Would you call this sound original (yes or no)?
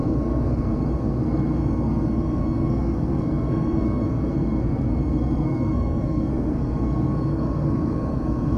no